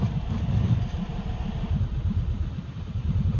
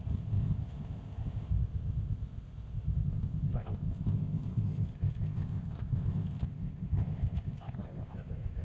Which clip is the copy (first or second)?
second